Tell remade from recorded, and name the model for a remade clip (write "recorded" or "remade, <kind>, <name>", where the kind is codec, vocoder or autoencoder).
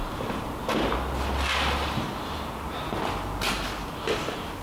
recorded